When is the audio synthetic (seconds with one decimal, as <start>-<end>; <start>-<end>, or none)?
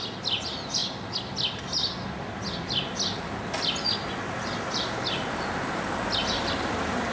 none